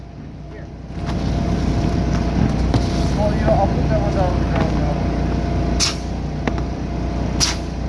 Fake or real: real